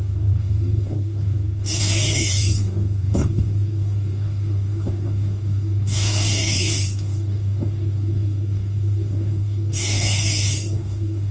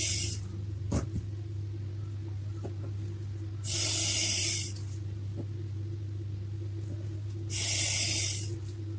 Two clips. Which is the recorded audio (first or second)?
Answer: second